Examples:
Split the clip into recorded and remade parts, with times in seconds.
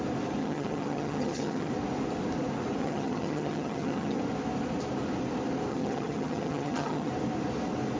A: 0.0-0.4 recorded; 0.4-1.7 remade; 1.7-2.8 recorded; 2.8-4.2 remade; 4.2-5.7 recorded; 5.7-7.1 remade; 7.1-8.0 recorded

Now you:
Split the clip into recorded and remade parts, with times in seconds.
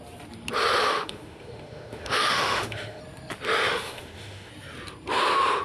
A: 0.0-0.9 recorded; 0.9-3.0 remade; 3.0-3.7 recorded; 3.7-4.5 remade; 4.5-5.6 recorded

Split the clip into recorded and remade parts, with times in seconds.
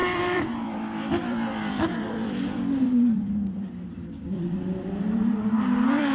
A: 0.0-6.1 remade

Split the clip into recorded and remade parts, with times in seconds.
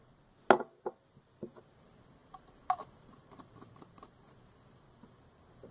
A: 0.0-1.6 recorded; 1.6-5.7 remade